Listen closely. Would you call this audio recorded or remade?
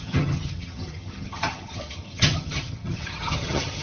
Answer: remade